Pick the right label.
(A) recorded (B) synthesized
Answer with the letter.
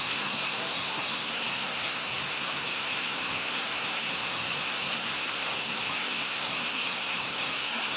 B